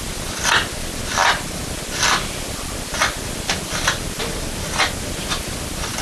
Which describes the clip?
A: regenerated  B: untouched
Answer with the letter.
B